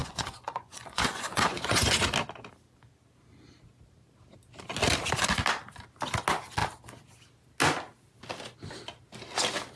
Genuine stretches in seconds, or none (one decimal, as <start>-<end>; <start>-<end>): 2.0-9.8